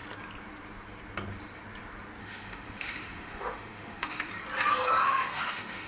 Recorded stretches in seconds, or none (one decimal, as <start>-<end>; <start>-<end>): 0.0-2.2; 4.3-5.0